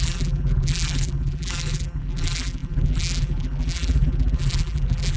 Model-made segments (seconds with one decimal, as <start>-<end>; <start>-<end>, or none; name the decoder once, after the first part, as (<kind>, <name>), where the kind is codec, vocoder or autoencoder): 0.0-5.2 (vocoder, BigVGAN v2)